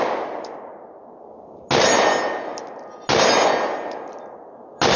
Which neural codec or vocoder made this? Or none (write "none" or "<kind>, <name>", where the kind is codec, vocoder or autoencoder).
none